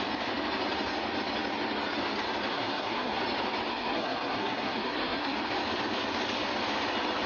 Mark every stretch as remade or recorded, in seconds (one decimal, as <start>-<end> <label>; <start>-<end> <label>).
0.0-2.5 recorded; 2.5-3.2 remade; 3.2-3.7 recorded; 3.7-5.4 remade; 5.4-7.3 recorded